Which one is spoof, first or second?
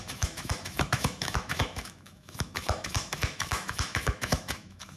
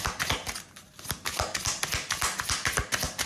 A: first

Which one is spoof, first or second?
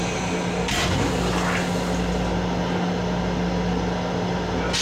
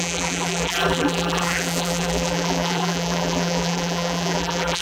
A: second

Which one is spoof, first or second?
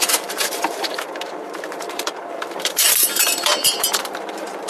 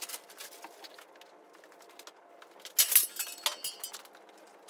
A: first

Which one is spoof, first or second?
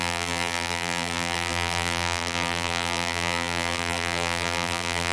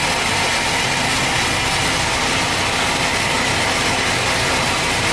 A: first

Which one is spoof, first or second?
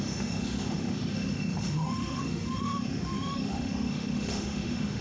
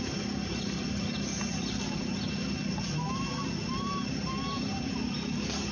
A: first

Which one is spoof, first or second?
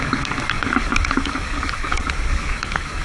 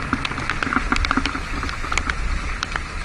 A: first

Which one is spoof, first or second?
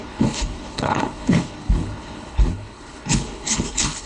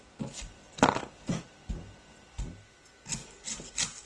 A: first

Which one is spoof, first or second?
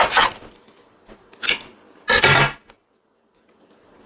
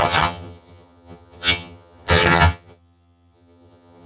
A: second